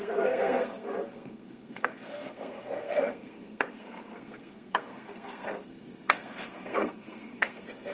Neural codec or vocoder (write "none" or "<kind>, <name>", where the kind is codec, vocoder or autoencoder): codec, SNAC